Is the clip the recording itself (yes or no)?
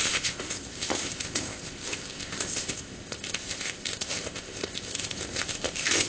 no